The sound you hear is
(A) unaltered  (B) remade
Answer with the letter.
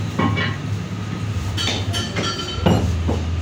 A